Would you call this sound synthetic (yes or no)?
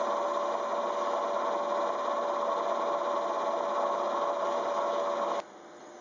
no